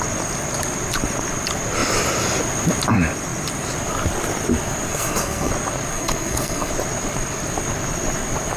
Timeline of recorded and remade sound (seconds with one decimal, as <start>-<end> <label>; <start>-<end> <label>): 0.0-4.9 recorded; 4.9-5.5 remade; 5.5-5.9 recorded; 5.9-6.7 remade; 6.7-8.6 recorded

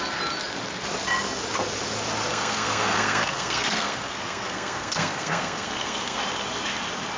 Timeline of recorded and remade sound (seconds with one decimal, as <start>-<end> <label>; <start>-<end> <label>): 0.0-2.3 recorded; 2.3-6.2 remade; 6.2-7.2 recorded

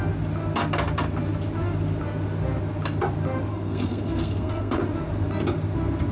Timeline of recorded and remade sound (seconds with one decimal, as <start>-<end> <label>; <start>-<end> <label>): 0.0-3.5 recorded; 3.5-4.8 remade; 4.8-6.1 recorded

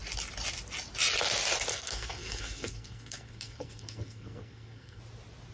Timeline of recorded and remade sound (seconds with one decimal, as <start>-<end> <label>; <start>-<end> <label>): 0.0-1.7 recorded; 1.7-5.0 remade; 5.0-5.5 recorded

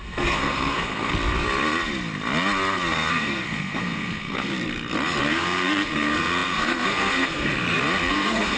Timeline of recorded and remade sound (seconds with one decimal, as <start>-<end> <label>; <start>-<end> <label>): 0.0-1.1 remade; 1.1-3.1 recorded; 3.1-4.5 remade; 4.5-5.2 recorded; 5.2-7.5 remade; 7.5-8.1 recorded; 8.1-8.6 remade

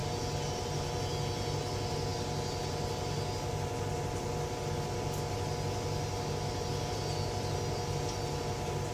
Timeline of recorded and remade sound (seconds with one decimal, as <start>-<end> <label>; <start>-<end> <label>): 0.0-8.9 recorded

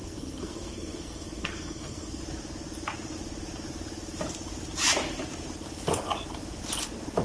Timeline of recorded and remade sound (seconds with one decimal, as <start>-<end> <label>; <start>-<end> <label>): 0.0-2.2 remade; 2.2-7.2 recorded